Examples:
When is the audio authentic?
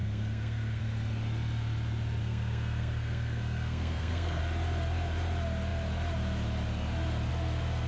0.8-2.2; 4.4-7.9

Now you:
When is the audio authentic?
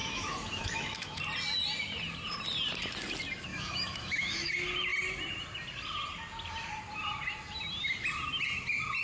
1.2-3.5; 4.5-9.0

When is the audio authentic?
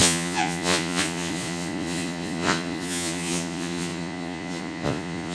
none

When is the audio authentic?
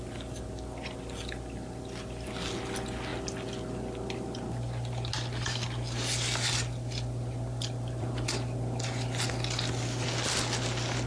0.0-11.1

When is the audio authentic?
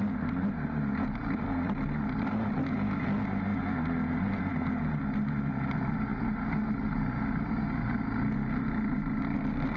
0.0-9.8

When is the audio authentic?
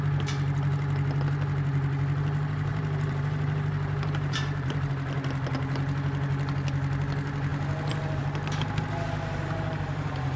0.0-2.7; 4.9-9.2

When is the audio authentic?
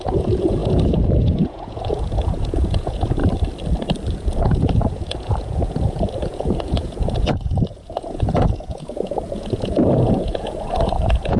3.2-4.1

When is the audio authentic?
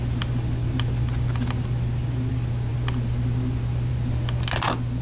0.0-5.0